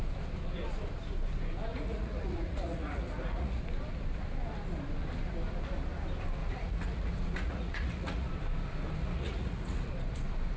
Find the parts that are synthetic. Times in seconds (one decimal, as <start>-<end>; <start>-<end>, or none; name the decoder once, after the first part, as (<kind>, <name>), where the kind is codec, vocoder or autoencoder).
1.7-3.6 (vocoder, Vocos); 6.4-8.3; 9.0-9.9